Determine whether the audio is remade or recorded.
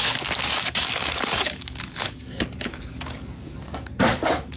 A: remade